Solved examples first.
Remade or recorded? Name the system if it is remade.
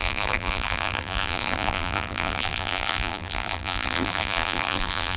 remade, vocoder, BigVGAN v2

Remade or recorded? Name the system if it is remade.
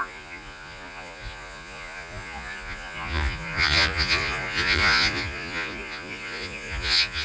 remade, vocoder, Vocos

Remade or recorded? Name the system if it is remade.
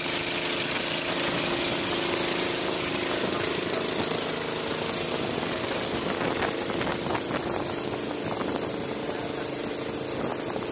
recorded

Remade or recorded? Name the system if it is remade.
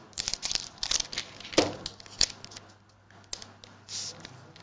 recorded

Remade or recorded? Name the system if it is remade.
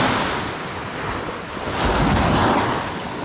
recorded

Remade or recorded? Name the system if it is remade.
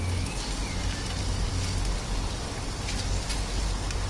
recorded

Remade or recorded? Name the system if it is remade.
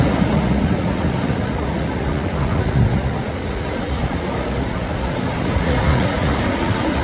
remade, vocoder, Vocos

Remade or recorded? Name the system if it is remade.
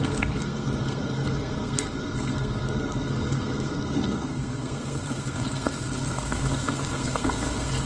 remade, codec, SNAC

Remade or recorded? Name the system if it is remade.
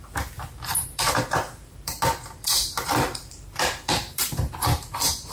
remade, vocoder, BigVGAN v2